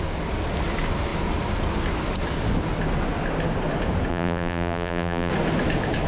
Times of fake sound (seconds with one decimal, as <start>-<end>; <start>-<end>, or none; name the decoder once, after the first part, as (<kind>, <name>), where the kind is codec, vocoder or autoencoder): 4.1-5.3 (vocoder, BigVGAN v2)